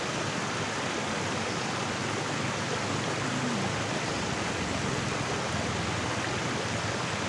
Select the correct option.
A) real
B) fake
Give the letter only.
A